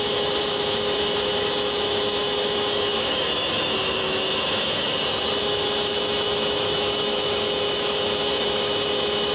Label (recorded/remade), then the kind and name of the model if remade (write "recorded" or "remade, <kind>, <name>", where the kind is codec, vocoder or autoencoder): remade, autoencoder, DAC-VAE